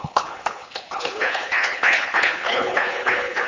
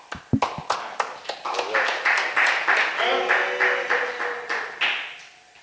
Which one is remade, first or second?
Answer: first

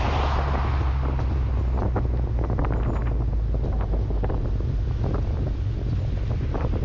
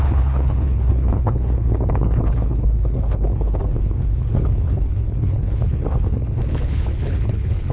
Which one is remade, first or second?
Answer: second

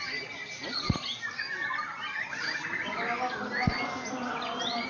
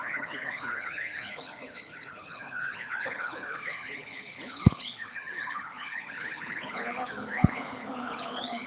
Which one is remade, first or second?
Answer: second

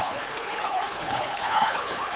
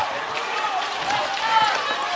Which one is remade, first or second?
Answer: first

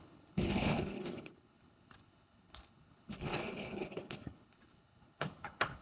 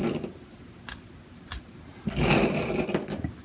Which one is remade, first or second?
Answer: first